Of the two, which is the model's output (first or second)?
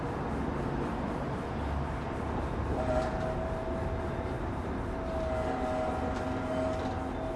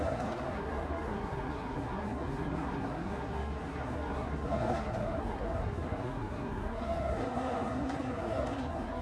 second